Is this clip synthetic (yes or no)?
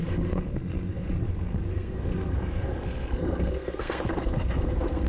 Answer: yes